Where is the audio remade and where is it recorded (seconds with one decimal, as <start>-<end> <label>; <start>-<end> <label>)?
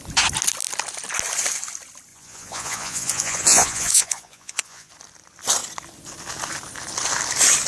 0.0-2.1 recorded; 2.1-4.9 remade; 4.9-7.7 recorded